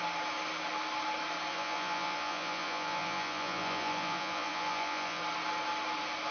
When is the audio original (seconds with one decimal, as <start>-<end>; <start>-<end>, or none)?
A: 0.0-1.5; 5.2-6.3